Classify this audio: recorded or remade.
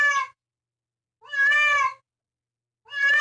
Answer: recorded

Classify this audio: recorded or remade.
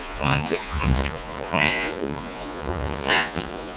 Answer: remade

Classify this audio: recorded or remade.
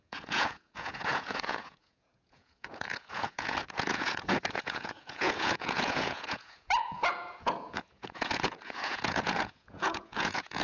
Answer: remade